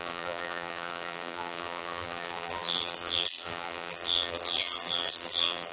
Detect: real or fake fake